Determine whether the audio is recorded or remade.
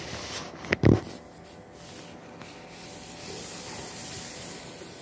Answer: recorded